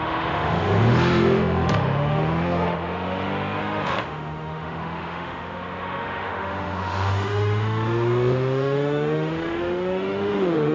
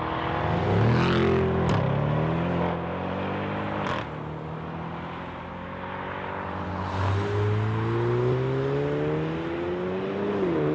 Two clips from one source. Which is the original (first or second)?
second